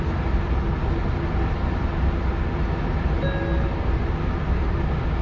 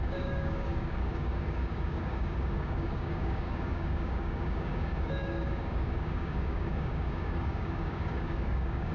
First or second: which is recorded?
first